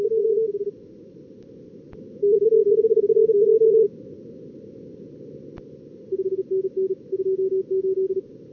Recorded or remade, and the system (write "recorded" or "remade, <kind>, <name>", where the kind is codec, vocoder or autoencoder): recorded